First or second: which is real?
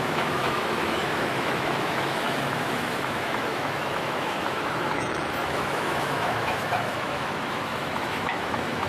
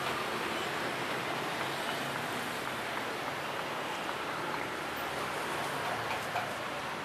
second